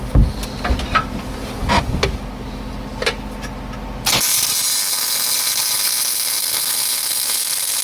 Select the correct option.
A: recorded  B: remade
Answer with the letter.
A